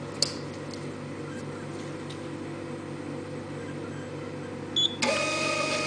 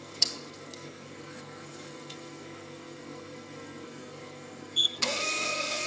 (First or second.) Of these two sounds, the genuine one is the first